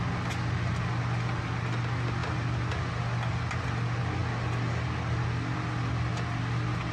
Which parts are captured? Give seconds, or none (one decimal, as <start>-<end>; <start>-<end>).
0.0-6.9